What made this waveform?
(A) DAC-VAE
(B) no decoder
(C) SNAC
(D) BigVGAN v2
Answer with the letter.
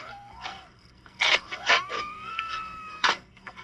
C